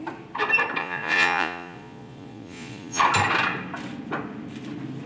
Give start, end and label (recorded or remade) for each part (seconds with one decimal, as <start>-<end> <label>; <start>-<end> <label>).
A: 0.0-0.8 recorded; 0.8-3.0 remade; 3.0-5.1 recorded